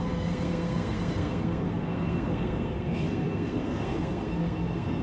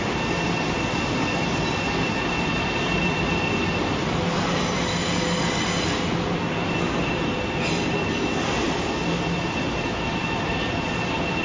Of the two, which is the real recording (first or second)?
second